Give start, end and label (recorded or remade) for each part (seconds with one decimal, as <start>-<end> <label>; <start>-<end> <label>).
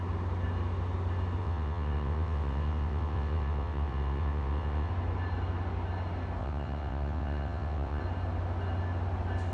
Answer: 0.0-1.4 recorded; 1.4-4.9 remade; 4.9-6.4 recorded; 6.4-8.0 remade; 8.0-9.5 recorded